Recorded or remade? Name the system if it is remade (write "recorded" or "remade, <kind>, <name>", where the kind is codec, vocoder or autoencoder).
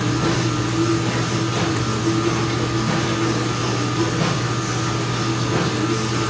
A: recorded